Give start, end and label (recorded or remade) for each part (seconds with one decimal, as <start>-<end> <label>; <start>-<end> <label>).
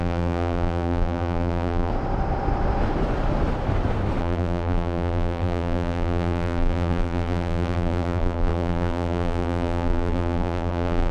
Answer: 0.0-1.9 remade; 1.9-4.2 recorded; 4.2-11.1 remade